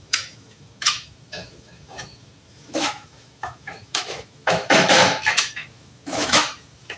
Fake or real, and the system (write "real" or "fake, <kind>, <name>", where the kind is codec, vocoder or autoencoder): fake, autoencoder, DAC-VAE